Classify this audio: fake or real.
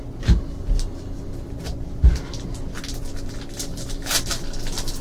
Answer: real